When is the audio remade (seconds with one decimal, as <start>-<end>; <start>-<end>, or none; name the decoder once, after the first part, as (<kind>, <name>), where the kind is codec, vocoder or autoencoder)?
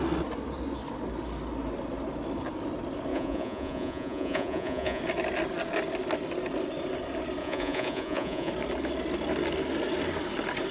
3.1-5.0 (vocoder, Vocos); 7.4-8.5